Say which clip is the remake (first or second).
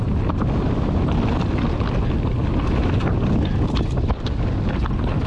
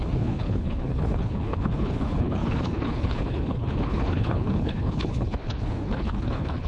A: second